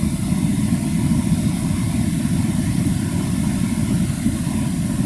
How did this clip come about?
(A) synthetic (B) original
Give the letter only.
B